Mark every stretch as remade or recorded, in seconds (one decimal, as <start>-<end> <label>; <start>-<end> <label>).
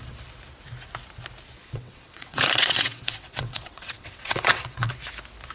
0.0-1.6 recorded; 1.6-4.9 remade; 4.9-5.5 recorded